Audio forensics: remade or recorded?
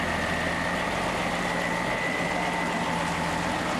recorded